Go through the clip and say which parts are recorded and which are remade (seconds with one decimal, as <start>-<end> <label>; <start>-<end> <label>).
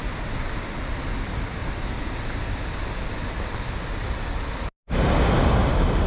0.0-6.1 recorded